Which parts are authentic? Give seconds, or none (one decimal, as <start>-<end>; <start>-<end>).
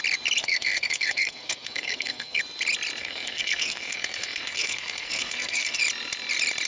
0.0-0.4; 2.4-3.0; 5.8-6.7